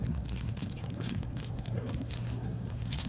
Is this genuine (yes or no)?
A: no